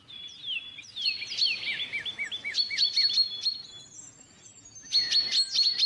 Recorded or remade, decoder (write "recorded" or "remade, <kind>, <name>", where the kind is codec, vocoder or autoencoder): recorded